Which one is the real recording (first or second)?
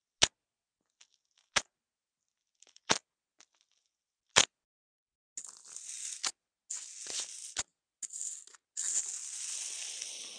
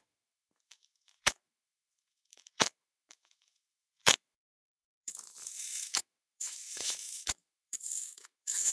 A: first